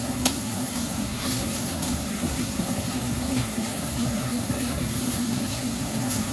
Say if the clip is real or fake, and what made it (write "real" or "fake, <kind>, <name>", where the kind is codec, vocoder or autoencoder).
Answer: fake, codec, SNAC